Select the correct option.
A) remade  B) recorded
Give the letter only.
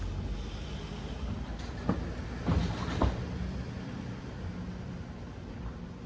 B